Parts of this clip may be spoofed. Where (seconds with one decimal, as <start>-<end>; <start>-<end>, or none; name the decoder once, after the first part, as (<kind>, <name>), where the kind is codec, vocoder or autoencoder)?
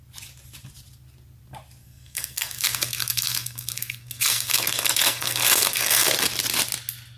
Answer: 1.8-6.1 (codec, SNAC)